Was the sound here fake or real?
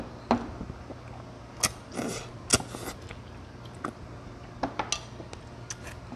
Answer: real